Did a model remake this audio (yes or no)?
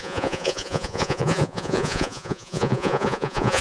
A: yes